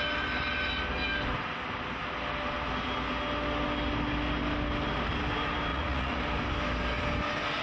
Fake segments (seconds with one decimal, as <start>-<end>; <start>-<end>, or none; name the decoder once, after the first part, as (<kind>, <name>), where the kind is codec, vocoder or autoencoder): 5.7-6.2 (vocoder, Vocos)